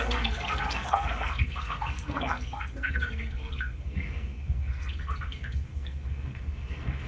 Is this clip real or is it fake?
fake